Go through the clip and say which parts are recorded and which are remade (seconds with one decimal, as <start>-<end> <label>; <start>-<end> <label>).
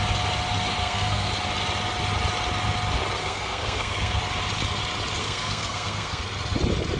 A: 0.0-0.8 recorded; 0.8-1.3 remade; 1.3-3.2 recorded; 3.2-4.2 remade; 4.2-5.2 recorded; 5.2-6.2 remade; 6.2-7.0 recorded